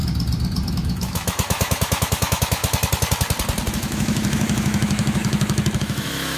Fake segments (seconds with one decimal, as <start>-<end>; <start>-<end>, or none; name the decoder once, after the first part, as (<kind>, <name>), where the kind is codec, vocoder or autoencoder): 0.7-2.6 (autoencoder, DAC-VAE); 3.7-6.4